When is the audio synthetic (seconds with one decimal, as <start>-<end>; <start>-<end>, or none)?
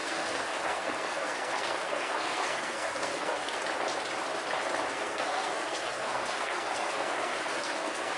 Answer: 0.0-3.6; 4.9-8.2